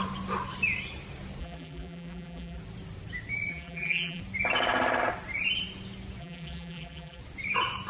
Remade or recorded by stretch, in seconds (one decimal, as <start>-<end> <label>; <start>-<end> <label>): 0.0-1.4 recorded; 1.4-2.6 remade; 2.6-3.5 recorded; 3.5-4.2 remade; 4.2-6.2 recorded; 6.2-7.2 remade; 7.2-7.9 recorded